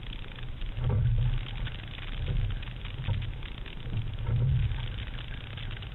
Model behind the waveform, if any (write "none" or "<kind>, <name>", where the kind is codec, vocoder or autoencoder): none